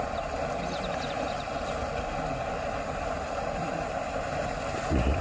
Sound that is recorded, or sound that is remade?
recorded